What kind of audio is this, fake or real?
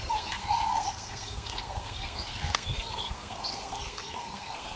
fake